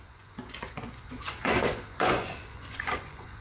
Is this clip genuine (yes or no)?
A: no